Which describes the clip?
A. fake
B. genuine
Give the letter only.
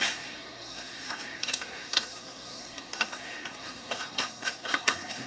A